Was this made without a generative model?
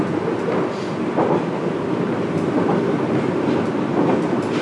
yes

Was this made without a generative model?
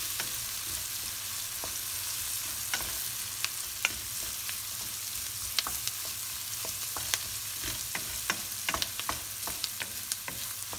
yes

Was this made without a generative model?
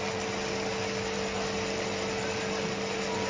no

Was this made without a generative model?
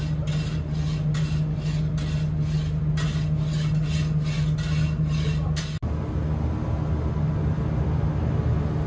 yes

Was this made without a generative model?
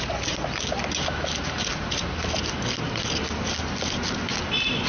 yes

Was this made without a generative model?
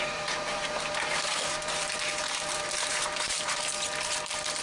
no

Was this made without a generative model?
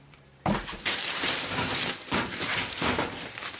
no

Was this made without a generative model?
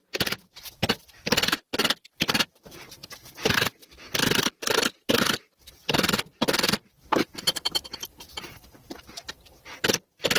no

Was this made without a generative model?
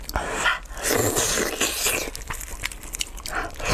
no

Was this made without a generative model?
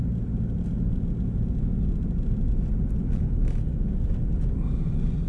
yes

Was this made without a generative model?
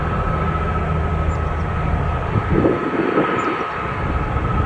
yes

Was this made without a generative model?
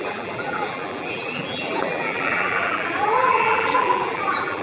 no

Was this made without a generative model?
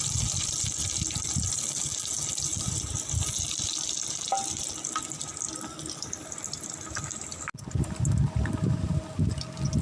yes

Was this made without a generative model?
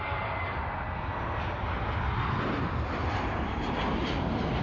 yes